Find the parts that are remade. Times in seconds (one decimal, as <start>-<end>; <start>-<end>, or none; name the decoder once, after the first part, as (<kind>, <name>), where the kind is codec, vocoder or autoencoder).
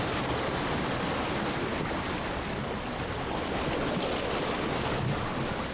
none